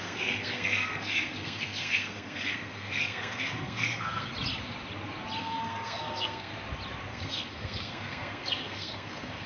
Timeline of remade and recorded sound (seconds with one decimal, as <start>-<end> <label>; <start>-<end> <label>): 0.0-4.3 remade; 4.3-5.4 recorded; 5.4-6.5 remade; 6.5-7.1 recorded; 7.1-9.5 remade